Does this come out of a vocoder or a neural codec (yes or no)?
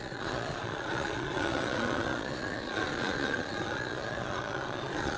yes